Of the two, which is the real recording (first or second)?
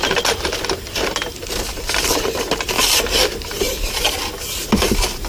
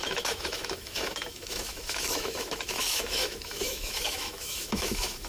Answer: first